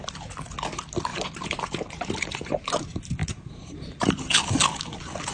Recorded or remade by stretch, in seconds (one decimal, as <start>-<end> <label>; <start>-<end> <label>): 0.0-1.1 recorded; 1.1-2.8 remade; 2.8-3.2 recorded; 3.2-4.1 remade; 4.1-5.3 recorded